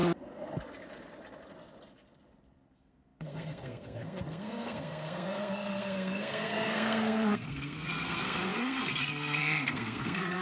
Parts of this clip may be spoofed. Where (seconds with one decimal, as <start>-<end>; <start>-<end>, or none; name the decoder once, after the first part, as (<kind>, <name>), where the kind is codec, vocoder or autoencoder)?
2.7-10.4 (codec, SNAC)